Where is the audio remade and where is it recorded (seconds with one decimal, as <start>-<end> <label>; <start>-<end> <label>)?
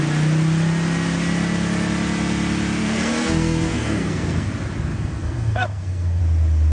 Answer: 0.0-2.8 recorded; 2.8-4.5 remade; 4.5-4.9 recorded; 4.9-6.2 remade; 6.2-6.7 recorded